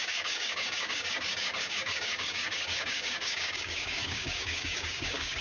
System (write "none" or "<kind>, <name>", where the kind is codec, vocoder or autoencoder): codec, DAC